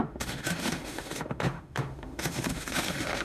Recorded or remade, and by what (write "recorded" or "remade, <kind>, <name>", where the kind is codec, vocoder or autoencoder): remade, autoencoder, DAC-VAE